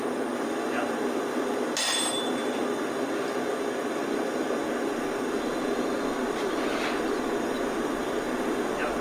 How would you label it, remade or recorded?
recorded